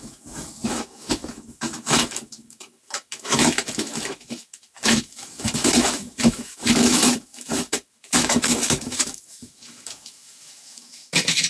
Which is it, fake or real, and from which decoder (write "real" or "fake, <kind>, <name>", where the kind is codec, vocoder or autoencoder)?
fake, autoencoder, DAC-VAE